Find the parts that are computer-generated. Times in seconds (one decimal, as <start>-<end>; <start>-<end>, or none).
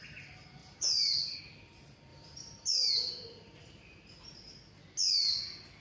0.6-1.4; 2.1-2.9